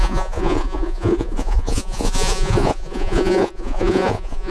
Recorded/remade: remade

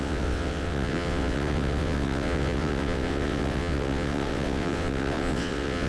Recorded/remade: remade